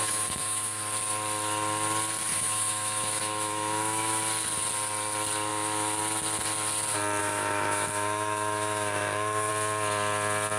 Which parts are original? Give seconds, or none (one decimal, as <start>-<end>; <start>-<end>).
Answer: 0.8-2.3; 4.2-5.5; 6.0-7.2; 9.5-10.6